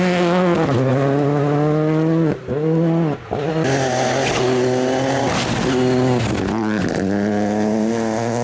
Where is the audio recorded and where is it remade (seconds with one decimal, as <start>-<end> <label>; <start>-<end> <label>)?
0.0-8.4 recorded